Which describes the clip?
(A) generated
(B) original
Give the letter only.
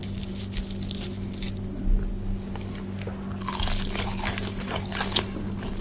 B